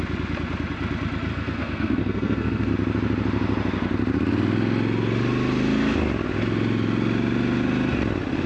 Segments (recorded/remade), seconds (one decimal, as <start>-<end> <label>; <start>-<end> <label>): 0.0-1.3 recorded; 1.3-2.7 remade; 2.7-8.5 recorded